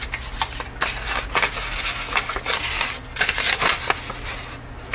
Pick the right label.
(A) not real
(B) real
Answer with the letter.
B